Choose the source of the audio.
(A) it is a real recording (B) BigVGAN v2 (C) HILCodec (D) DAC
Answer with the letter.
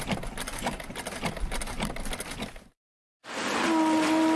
A